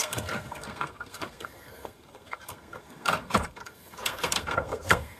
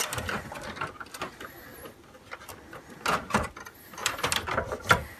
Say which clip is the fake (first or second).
first